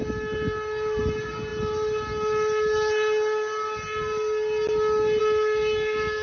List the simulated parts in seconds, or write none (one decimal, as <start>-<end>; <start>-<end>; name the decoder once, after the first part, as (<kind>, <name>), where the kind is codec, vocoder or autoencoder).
none